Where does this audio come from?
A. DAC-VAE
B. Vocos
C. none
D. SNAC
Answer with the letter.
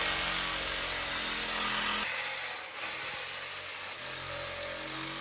C